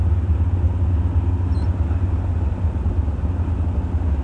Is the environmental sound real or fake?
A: real